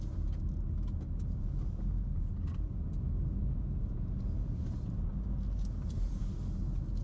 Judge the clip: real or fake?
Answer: real